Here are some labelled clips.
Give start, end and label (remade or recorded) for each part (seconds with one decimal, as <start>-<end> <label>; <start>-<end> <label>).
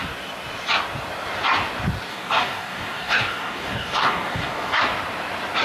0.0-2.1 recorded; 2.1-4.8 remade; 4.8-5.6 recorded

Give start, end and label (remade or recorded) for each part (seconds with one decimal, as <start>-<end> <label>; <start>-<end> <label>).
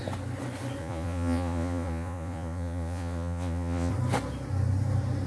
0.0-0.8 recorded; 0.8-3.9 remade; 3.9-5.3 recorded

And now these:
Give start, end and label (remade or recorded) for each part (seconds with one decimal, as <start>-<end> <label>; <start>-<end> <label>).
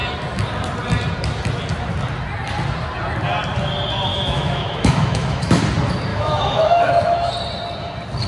0.0-4.1 recorded; 4.1-5.6 remade; 5.6-6.1 recorded; 6.1-7.3 remade; 7.3-8.3 recorded